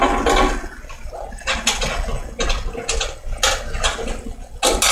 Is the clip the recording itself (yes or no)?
yes